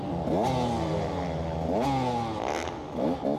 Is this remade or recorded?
recorded